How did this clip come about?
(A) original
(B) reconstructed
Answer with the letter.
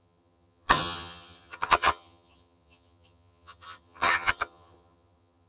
B